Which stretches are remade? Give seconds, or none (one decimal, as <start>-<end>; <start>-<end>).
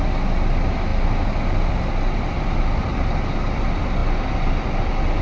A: none